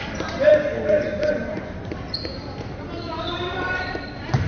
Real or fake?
fake